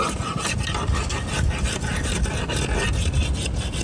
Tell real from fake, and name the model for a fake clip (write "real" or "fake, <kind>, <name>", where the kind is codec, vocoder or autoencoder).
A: real